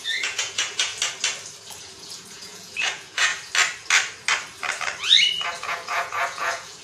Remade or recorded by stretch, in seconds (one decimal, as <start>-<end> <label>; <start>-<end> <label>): 0.0-0.9 remade; 0.9-1.8 recorded; 1.8-3.3 remade; 3.3-5.3 recorded; 5.3-6.8 remade